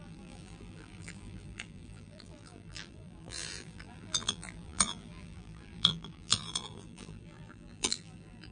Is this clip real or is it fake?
fake